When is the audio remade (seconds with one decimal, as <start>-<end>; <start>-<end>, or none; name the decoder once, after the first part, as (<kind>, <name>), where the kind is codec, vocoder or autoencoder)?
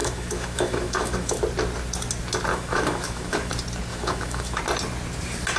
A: 0.0-1.4 (autoencoder, DAC-VAE); 2.5-3.5; 3.9-4.6